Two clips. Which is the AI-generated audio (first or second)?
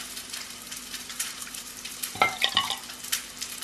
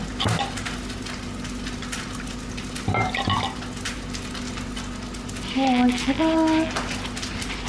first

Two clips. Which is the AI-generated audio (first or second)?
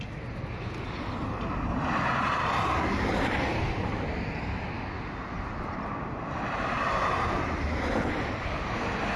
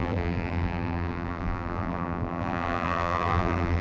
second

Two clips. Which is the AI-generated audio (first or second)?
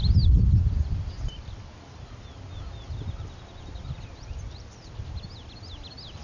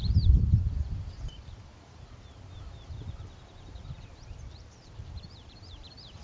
second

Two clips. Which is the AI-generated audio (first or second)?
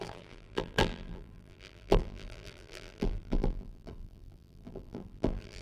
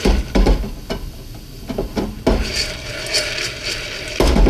first